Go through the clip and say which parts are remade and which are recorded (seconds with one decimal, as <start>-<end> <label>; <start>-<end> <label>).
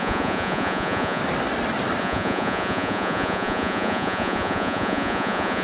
0.0-1.2 remade; 1.2-2.0 recorded; 2.0-5.6 remade